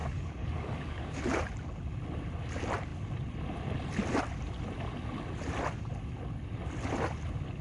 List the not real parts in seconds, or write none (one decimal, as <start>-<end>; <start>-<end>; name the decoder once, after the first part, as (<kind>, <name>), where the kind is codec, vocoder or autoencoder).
0.0-1.2 (codec, DAC)